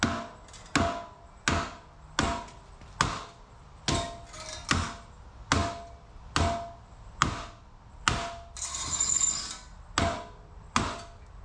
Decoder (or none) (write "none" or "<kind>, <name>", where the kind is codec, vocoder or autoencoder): none